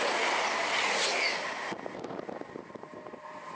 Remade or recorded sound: recorded